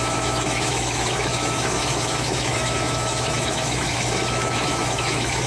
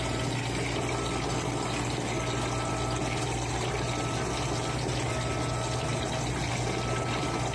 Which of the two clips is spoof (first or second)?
first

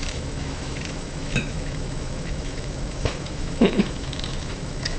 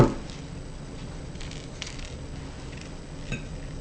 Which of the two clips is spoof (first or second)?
first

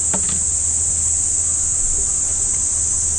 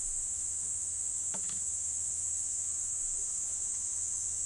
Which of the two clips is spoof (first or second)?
second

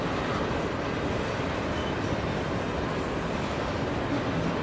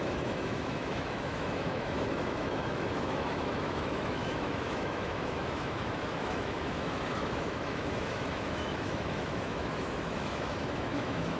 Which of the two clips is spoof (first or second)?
second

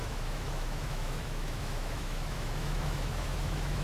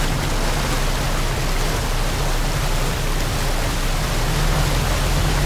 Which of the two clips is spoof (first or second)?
first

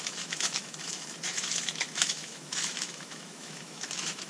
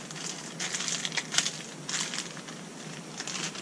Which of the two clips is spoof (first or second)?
first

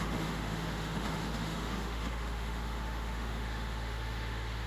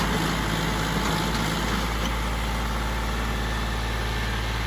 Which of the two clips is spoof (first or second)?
first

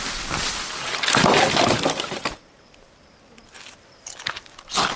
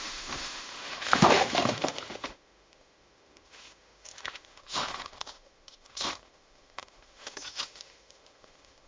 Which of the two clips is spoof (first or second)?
second